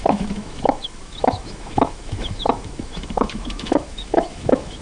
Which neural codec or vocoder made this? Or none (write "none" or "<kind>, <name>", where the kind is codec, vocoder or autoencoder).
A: autoencoder, DAC-VAE